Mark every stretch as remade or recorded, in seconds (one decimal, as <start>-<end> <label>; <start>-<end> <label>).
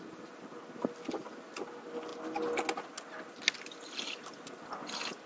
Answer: 0.0-5.3 recorded